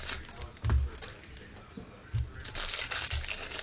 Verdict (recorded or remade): recorded